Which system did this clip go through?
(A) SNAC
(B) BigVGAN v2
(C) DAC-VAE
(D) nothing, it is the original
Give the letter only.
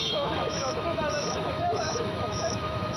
C